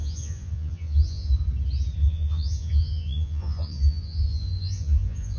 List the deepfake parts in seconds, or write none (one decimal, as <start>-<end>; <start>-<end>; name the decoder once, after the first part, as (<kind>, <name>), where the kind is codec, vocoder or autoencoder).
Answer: 0.0-1.3 (vocoder, Vocos); 2.0-5.4